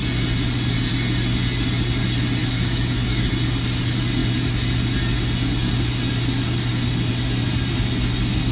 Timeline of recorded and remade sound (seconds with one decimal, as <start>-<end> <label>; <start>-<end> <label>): 0.0-2.4 recorded; 2.4-3.3 remade; 3.3-8.5 recorded